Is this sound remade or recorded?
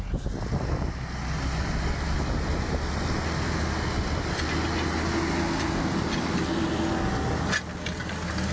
recorded